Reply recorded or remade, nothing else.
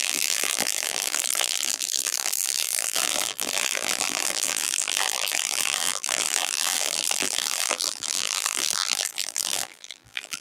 remade